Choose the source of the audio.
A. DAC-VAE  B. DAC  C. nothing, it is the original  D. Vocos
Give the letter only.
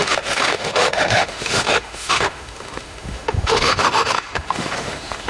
A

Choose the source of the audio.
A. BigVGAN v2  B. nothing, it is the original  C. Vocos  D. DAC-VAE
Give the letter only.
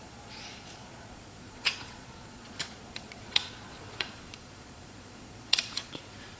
C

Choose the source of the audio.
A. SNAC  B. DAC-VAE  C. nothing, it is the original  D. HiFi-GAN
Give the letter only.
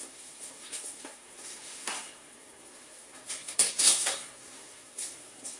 A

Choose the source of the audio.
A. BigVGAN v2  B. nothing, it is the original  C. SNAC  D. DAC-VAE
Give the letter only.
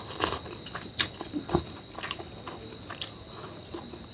B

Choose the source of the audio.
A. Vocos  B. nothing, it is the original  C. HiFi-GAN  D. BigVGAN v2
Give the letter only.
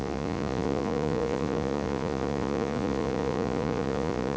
A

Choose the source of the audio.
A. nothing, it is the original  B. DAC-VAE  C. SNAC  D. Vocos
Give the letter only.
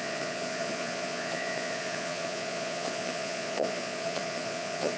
D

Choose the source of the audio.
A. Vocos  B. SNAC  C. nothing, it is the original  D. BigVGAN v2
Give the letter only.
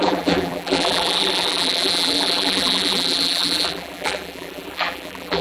D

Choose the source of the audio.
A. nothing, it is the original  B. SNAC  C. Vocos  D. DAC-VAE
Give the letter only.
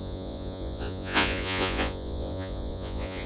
C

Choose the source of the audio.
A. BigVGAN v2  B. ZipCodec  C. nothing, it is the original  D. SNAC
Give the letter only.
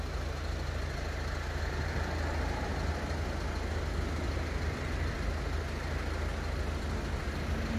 C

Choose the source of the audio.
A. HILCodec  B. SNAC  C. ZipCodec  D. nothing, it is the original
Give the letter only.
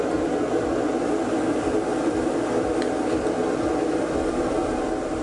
D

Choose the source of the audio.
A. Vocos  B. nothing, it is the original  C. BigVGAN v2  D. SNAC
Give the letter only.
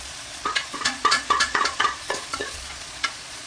A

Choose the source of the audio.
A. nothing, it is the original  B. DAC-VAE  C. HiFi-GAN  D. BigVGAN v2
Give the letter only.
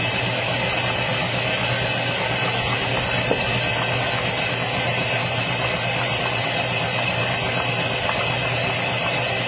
A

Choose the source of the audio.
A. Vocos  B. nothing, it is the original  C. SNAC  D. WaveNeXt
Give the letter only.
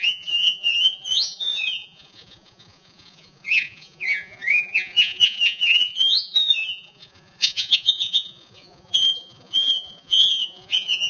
A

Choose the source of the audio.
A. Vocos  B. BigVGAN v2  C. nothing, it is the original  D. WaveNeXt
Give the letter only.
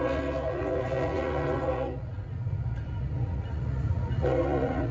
A